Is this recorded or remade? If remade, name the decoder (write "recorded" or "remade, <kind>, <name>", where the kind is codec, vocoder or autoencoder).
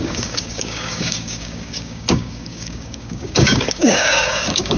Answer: remade, codec, DAC